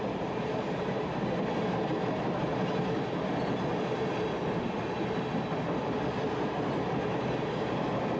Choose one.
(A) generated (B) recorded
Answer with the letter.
B